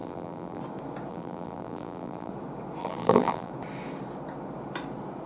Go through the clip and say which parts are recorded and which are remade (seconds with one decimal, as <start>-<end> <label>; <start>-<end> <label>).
0.0-0.6 remade; 0.6-1.1 recorded; 1.1-2.3 remade; 2.3-2.8 recorded; 2.8-3.5 remade; 3.5-5.3 recorded